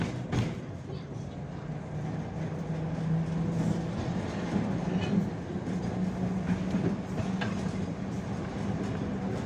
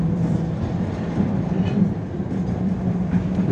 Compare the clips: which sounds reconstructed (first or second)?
second